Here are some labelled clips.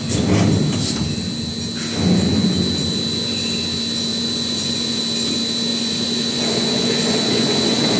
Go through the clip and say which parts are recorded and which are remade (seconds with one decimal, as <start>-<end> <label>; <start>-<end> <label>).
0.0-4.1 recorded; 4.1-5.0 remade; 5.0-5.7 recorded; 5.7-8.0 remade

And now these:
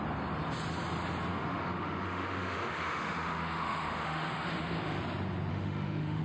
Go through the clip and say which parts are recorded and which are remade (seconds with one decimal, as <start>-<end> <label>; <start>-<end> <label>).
0.0-1.3 recorded; 1.3-5.0 remade; 5.0-5.5 recorded; 5.5-6.2 remade

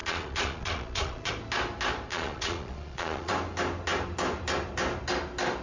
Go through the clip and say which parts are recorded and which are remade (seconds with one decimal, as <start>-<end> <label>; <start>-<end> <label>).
0.0-1.3 remade; 1.3-2.1 recorded; 2.1-3.3 remade; 3.3-5.6 recorded